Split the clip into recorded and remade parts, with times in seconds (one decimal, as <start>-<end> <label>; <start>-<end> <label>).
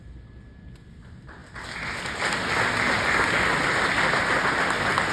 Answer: 0.0-5.1 recorded